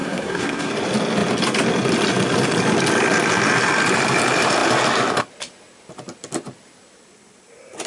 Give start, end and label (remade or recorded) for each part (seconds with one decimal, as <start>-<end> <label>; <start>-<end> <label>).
0.0-0.7 remade; 0.7-7.9 recorded